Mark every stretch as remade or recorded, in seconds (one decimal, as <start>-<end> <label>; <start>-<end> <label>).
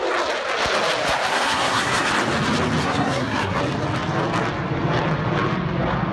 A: 0.0-1.3 recorded; 1.3-2.1 remade; 2.1-2.8 recorded; 2.8-3.6 remade; 3.6-6.1 recorded